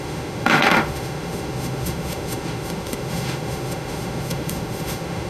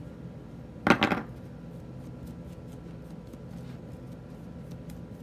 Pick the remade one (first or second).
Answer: first